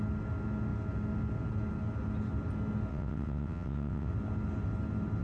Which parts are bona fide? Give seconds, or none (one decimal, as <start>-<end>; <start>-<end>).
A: 0.0-2.9; 4.1-5.2